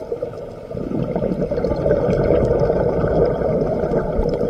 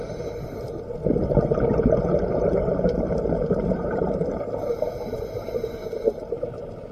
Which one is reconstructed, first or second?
second